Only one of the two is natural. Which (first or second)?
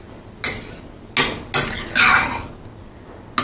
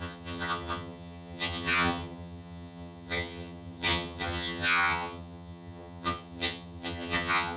first